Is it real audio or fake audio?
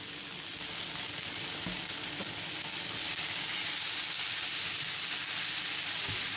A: real